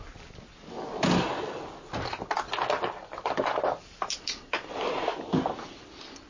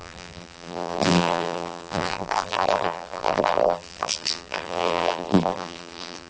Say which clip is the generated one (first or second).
second